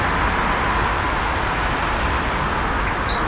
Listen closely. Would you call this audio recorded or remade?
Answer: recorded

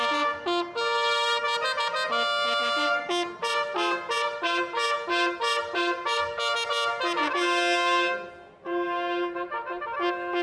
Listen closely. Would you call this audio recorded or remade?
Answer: recorded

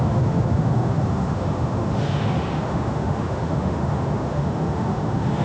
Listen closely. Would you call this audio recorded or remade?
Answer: remade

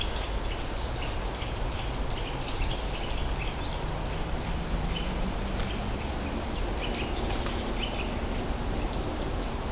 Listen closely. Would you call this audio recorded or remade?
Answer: recorded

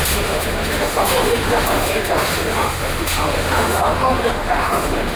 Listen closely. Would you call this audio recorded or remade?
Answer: remade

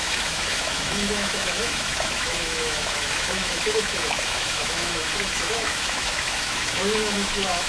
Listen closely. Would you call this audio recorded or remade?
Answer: remade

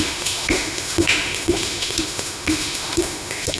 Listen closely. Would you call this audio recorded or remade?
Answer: remade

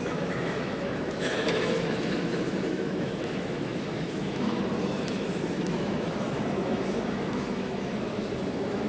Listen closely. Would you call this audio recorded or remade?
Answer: remade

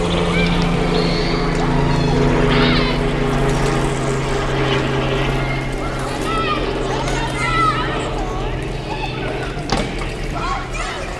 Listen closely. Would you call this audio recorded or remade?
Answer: recorded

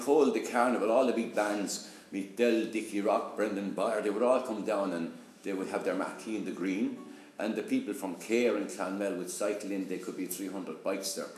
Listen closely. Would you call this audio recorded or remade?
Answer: remade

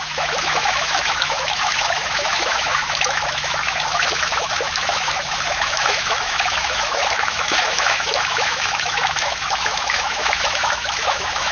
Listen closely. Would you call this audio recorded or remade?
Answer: remade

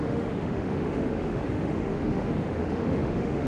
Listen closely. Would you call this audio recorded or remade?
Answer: remade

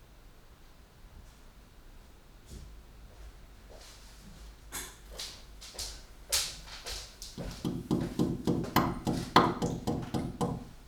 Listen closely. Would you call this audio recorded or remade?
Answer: recorded